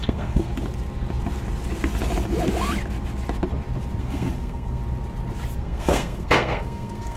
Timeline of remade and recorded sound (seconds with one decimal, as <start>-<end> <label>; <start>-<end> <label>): 0.0-0.5 remade; 0.5-4.0 recorded; 4.0-4.8 remade; 4.8-5.6 recorded; 5.6-7.2 remade